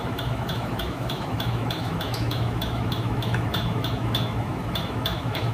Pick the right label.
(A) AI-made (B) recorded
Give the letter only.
A